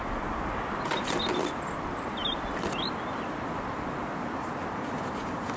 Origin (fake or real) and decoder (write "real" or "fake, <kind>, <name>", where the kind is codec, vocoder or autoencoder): real